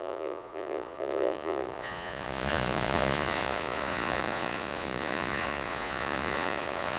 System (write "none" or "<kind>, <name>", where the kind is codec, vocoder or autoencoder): vocoder, Vocos